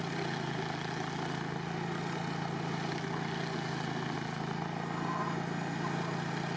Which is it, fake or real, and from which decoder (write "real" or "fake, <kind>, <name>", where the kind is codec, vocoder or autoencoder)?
real